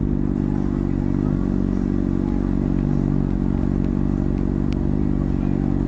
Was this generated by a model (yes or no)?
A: no